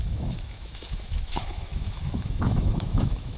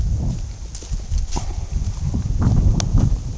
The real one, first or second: second